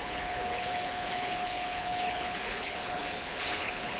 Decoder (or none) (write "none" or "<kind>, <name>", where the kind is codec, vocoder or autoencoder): codec, HILCodec